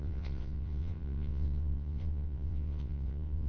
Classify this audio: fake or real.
fake